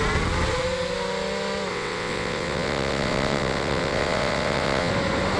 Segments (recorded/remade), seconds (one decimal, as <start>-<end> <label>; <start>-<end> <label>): 0.0-1.7 recorded; 1.7-4.9 remade; 4.9-5.4 recorded